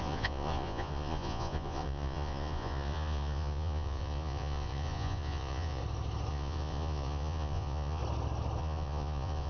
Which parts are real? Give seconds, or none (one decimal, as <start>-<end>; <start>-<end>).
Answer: 5.8-6.3; 8.0-8.6